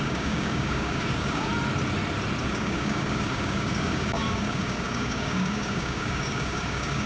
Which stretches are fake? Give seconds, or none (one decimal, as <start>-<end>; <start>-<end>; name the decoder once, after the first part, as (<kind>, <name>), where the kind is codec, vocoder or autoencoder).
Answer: 0.0-1.5 (codec, DAC); 2.4-7.1